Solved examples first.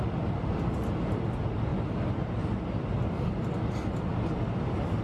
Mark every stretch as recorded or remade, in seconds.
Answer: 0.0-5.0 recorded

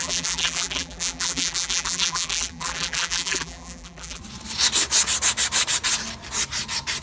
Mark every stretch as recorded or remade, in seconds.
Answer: 0.0-4.2 remade; 4.2-7.0 recorded

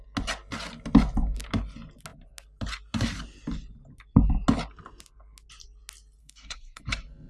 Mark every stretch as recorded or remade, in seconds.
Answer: 0.0-6.2 recorded; 6.2-6.8 remade; 6.8-7.3 recorded

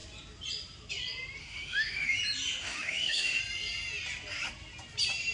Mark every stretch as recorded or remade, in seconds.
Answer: 0.0-1.4 recorded; 1.4-2.2 remade; 2.2-2.6 recorded; 2.6-3.4 remade; 3.4-5.3 recorded

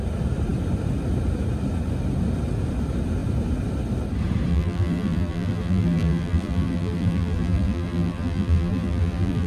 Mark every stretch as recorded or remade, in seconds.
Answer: 0.0-4.5 recorded; 4.5-9.5 remade

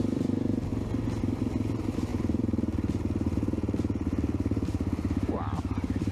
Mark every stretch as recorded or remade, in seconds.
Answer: 0.0-0.7 remade; 0.7-1.2 recorded; 1.2-6.1 remade

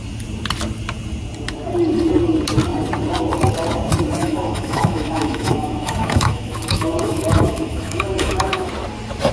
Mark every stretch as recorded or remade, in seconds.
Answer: 0.0-4.2 recorded; 4.2-8.7 remade; 8.7-9.3 recorded

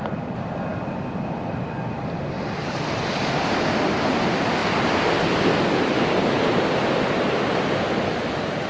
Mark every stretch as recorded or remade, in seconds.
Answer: 0.0-8.7 recorded